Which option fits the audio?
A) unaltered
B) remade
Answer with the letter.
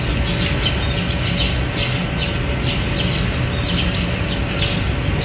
A